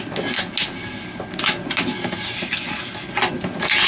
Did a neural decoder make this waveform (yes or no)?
no